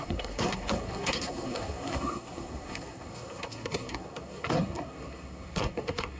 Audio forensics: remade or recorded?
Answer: remade